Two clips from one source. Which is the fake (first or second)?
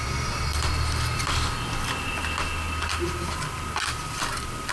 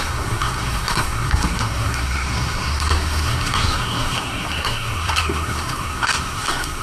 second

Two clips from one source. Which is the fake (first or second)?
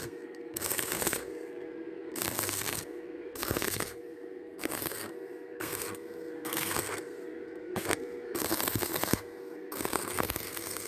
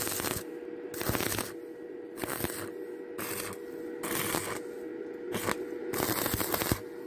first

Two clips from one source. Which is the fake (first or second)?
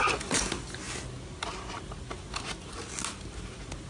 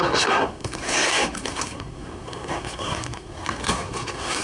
second